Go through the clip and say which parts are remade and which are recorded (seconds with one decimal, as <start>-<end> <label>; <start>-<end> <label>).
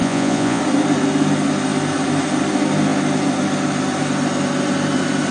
0.0-0.6 remade; 0.6-5.3 recorded